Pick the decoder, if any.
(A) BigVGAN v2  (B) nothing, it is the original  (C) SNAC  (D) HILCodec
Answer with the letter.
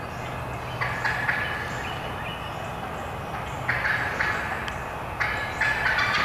B